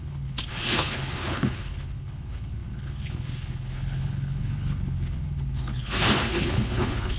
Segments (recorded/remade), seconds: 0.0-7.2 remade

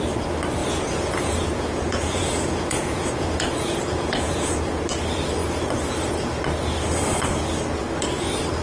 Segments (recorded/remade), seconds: 0.0-0.6 recorded; 0.6-4.8 remade; 4.8-8.6 recorded

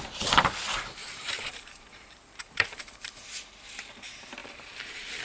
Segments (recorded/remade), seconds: 0.0-1.0 recorded; 1.0-3.2 remade; 3.2-4.4 recorded; 4.4-5.2 remade

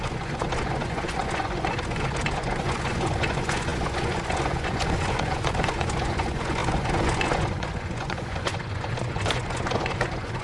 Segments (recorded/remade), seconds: 0.0-10.4 remade

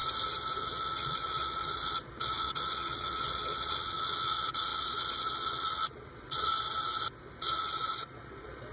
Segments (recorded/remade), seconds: 0.0-0.6 recorded; 0.6-6.5 remade; 6.5-7.4 recorded; 7.4-8.7 remade

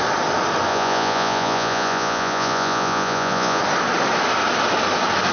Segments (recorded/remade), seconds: 0.0-0.7 recorded; 0.7-3.6 remade; 3.6-5.3 recorded

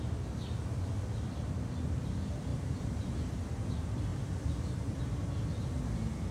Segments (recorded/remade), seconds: 0.0-2.5 recorded; 2.5-3.2 remade; 3.2-4.1 recorded; 4.1-5.0 remade; 5.0-6.3 recorded